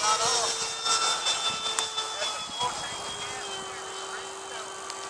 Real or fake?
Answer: real